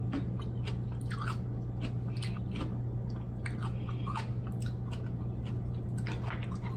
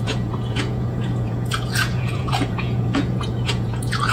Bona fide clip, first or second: first